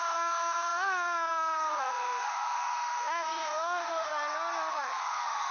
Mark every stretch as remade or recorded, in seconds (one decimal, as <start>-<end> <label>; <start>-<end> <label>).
0.0-4.1 remade; 4.1-4.7 recorded; 4.7-5.5 remade